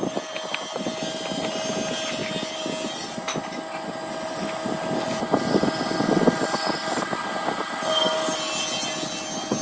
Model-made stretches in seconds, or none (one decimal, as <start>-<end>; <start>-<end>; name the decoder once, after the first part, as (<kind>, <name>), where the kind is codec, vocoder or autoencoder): none